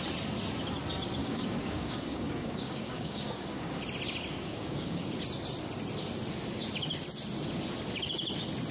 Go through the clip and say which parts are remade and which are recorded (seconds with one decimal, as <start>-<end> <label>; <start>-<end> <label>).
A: 0.0-1.2 recorded; 1.2-3.8 remade; 3.8-4.3 recorded; 4.3-5.2 remade; 5.2-8.7 recorded